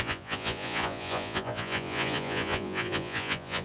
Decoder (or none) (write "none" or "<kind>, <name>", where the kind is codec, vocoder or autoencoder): vocoder, Vocos